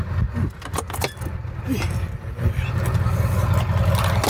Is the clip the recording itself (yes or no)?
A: yes